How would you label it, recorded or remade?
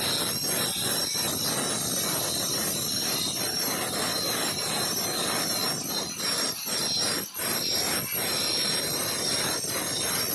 recorded